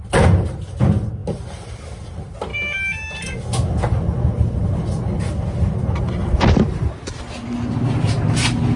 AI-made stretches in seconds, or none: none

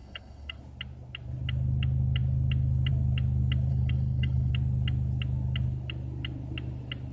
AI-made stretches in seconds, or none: 0.0-0.6 (codec, HILCodec); 3.7-4.5

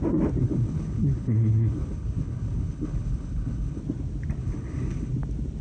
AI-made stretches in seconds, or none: 0.4-3.8 (codec, HILCodec); 4.4-5.1